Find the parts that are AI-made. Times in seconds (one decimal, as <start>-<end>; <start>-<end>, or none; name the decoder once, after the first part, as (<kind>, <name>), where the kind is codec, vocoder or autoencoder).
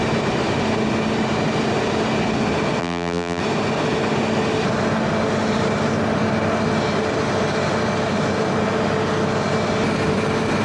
2.8-3.4 (vocoder, BigVGAN v2)